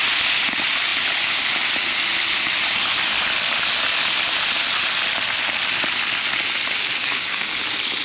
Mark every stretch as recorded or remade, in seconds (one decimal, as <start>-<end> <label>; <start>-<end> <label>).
0.0-7.0 recorded; 7.0-7.6 remade; 7.6-8.0 recorded